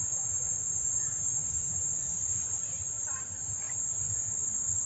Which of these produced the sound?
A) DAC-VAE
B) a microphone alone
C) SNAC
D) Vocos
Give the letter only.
B